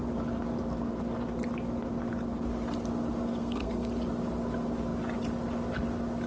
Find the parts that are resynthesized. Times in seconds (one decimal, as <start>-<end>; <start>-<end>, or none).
3.3-3.9